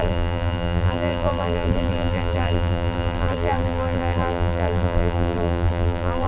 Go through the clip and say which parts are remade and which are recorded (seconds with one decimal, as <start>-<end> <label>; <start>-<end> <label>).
0.0-6.3 remade